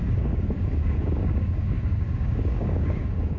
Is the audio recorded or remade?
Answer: remade